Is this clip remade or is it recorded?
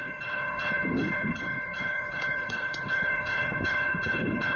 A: remade